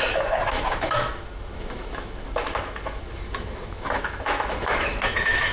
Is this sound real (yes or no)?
no